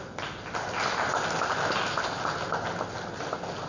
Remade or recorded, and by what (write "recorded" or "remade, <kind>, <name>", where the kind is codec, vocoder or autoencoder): recorded